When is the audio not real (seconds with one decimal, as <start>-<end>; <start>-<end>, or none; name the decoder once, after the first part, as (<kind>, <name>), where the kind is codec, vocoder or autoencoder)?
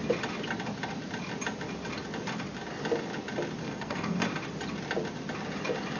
3.6-4.3 (codec, SNAC)